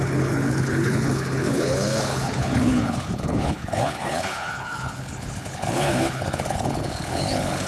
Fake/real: fake